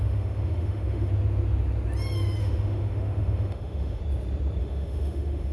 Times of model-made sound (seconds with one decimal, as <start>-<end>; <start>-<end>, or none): 0.0-1.1; 2.4-4.0; 4.6-5.5